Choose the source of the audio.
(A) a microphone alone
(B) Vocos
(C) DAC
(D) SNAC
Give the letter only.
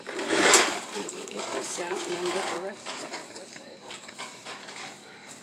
C